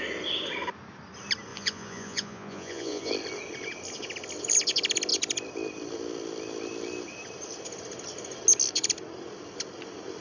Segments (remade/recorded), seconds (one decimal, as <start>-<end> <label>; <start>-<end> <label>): 0.0-1.5 recorded; 1.5-3.1 remade; 3.1-10.2 recorded